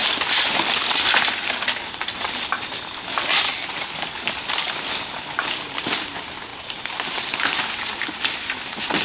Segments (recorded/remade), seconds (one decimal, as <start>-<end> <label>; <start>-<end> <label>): 0.0-0.6 remade; 0.6-9.0 recorded